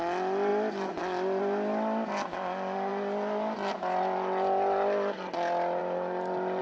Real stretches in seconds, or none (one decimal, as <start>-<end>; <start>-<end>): 0.0-6.6